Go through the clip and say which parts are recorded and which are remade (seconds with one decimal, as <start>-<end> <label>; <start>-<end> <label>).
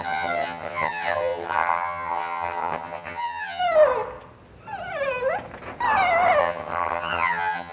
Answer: 0.0-3.6 remade; 3.6-6.4 recorded; 6.4-7.7 remade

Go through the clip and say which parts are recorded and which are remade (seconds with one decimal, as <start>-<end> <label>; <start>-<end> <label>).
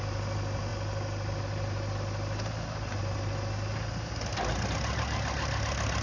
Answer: 0.0-6.0 recorded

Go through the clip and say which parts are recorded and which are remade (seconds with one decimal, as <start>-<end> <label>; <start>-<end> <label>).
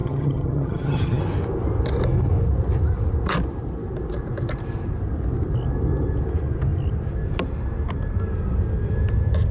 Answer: 0.0-1.2 remade; 1.2-9.5 recorded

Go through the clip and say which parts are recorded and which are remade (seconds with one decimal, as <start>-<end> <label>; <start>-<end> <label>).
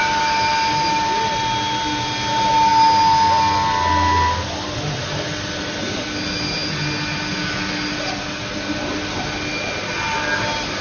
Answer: 0.0-10.8 recorded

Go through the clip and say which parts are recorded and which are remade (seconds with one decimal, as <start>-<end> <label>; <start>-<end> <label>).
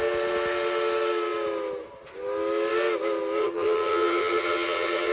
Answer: 0.0-3.4 recorded; 3.4-5.1 remade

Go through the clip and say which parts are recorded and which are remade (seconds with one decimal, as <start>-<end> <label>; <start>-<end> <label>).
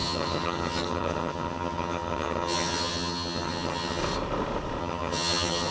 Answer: 0.0-4.0 remade; 4.0-4.8 recorded; 4.8-5.7 remade